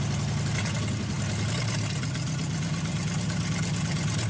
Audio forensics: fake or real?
real